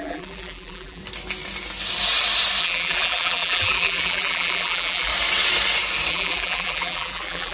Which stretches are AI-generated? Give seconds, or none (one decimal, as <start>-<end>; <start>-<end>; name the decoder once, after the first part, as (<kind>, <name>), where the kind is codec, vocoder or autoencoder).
0.0-1.0 (vocoder, BigVGAN v2); 2.6-5.1; 6.1-7.5